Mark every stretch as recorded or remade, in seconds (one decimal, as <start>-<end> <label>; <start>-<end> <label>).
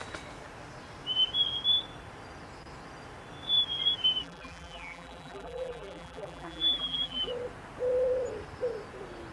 0.0-4.2 recorded; 4.2-7.3 remade; 7.3-9.3 recorded